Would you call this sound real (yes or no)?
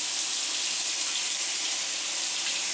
yes